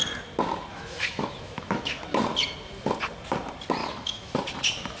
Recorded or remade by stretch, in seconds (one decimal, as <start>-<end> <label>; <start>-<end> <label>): 0.0-0.7 recorded; 0.7-2.0 remade; 2.0-3.8 recorded; 3.8-4.3 remade; 4.3-5.0 recorded